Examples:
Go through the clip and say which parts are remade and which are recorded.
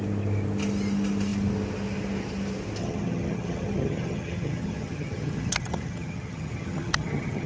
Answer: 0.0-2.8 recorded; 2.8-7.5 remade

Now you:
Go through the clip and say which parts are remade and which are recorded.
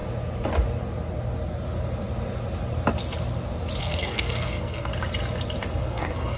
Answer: 0.0-3.8 recorded; 3.8-4.9 remade; 4.9-5.8 recorded; 5.8-6.4 remade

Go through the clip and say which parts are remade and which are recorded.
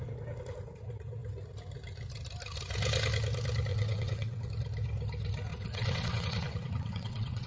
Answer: 0.0-3.7 recorded; 3.7-4.5 remade; 4.5-5.5 recorded; 5.5-7.5 remade